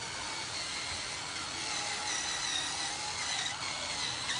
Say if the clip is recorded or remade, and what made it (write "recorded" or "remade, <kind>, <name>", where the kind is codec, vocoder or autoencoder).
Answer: recorded